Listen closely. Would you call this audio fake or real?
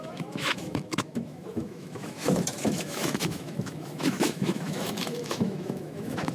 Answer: fake